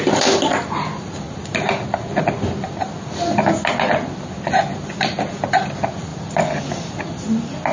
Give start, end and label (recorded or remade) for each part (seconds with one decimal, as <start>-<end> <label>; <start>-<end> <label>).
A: 0.0-7.7 recorded